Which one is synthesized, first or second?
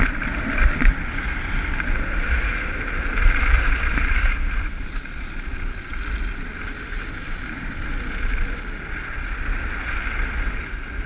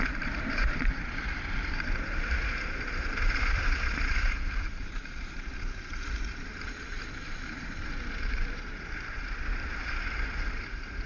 second